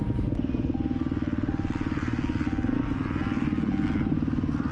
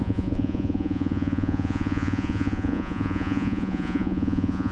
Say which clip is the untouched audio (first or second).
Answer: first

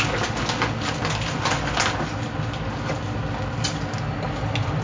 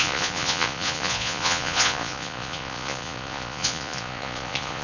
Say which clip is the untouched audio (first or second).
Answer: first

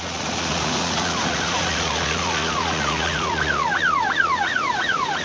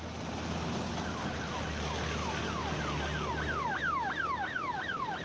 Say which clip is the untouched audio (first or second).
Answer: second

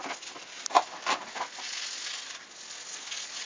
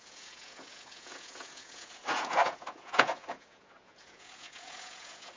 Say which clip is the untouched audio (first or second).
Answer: first